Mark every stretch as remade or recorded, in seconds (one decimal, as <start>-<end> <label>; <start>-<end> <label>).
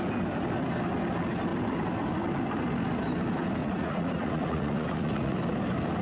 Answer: 0.0-3.6 recorded; 3.6-5.4 remade; 5.4-6.0 recorded